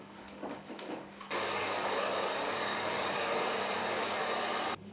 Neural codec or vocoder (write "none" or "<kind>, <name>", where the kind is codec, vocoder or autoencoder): codec, DAC